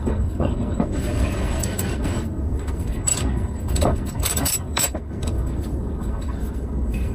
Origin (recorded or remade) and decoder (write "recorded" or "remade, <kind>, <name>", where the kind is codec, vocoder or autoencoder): remade, codec, SNAC